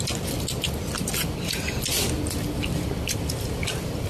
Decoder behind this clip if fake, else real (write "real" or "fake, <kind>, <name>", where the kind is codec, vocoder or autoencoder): real